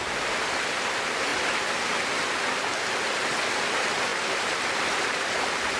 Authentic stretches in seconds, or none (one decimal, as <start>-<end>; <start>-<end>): 0.0-4.1